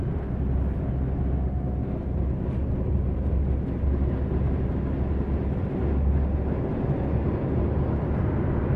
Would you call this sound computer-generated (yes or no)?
no